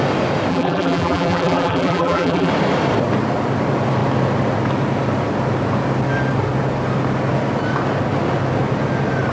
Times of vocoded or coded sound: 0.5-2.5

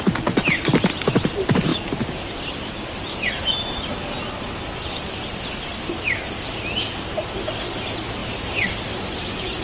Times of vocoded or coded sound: none

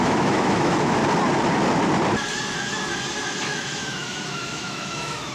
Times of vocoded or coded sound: 0.0-1.0; 3.4-5.3

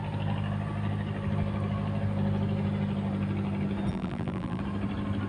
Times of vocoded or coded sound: 3.9-4.6

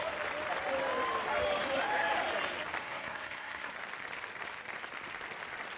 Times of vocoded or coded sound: 2.8-3.7

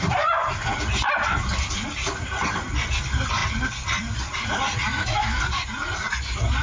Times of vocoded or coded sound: 4.9-5.4